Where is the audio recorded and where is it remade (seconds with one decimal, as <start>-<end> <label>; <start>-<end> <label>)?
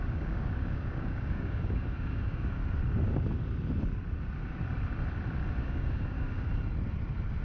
0.0-2.6 remade; 2.6-5.6 recorded; 5.6-6.5 remade; 6.5-7.4 recorded